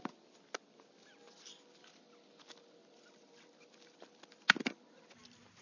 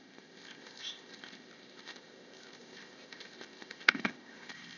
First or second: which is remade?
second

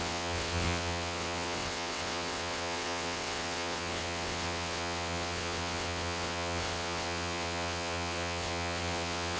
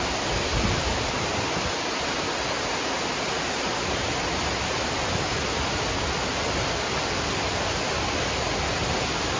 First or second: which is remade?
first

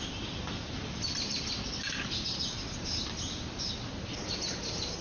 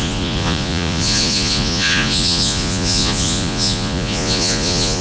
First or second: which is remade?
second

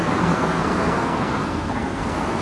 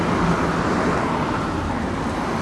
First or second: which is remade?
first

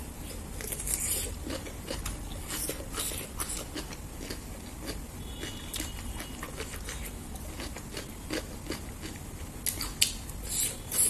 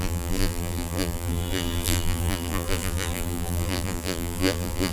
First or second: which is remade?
second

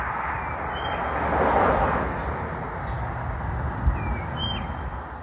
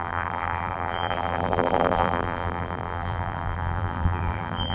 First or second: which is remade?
second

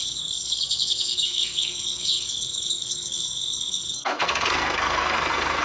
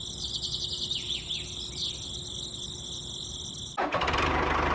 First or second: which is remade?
first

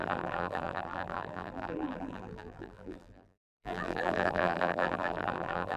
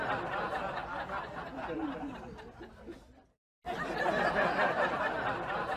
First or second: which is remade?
first